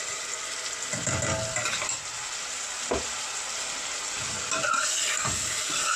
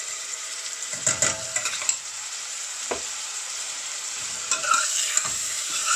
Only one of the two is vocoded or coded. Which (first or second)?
second